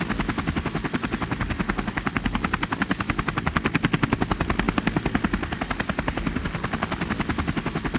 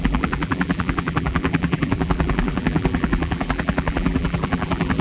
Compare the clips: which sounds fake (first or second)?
second